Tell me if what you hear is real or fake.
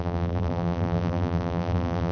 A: fake